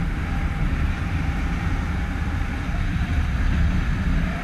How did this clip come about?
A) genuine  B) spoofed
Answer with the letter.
A